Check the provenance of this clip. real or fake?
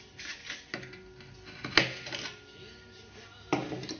real